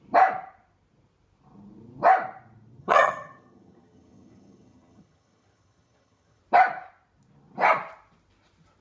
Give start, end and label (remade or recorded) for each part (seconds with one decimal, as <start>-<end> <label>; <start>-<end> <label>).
0.0-2.8 recorded; 2.8-6.4 remade; 6.4-8.8 recorded